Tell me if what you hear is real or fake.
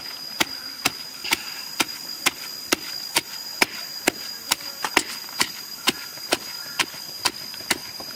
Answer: real